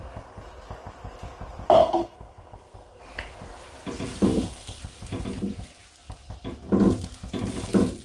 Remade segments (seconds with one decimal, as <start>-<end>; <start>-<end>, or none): 1.8-3.0; 4.3-4.8